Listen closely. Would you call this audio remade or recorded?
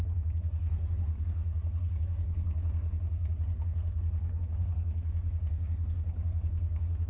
remade